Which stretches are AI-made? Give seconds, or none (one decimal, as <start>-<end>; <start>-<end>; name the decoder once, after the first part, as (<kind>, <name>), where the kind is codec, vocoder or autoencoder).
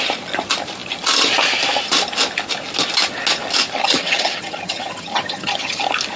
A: 3.8-5.8 (vocoder, HiFi-GAN)